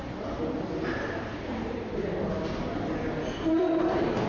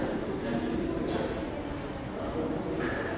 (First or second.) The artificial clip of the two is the first